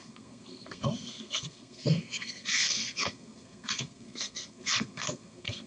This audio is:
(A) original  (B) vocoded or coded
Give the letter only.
B